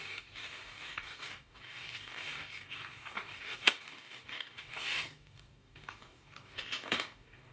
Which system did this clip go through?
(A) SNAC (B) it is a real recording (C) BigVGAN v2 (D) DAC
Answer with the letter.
D